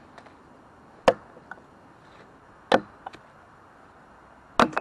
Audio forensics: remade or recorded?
recorded